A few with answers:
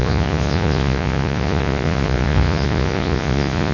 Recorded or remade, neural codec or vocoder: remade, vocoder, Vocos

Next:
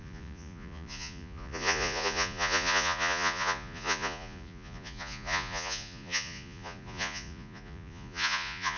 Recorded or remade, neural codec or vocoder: remade, vocoder, Vocos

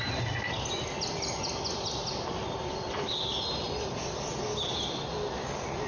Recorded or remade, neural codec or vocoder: recorded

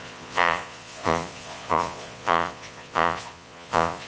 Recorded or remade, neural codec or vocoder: remade, vocoder, Vocos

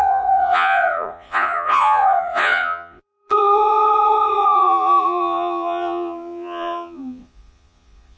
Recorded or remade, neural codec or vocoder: remade, vocoder, Vocos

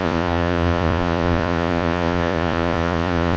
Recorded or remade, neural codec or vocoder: remade, vocoder, Vocos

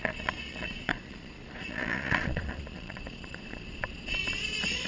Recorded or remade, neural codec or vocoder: remade, vocoder, Vocos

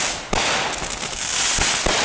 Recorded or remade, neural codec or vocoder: recorded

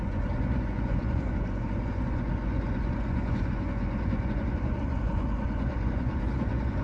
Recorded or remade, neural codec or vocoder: remade, vocoder, Vocos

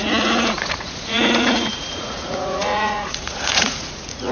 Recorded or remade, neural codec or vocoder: remade, vocoder, Vocos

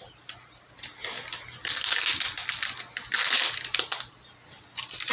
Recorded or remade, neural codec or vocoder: recorded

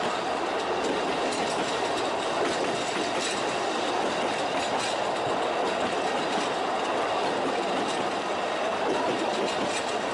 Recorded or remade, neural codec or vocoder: recorded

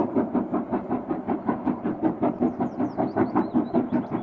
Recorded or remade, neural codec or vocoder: recorded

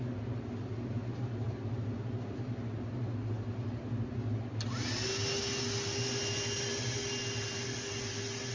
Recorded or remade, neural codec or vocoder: recorded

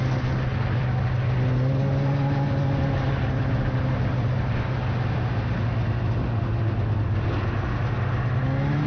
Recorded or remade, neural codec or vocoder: recorded